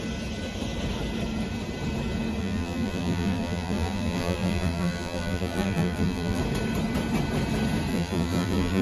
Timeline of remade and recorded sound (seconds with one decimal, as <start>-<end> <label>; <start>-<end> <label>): 0.0-2.4 recorded; 2.4-6.4 remade; 6.4-7.9 recorded; 7.9-8.8 remade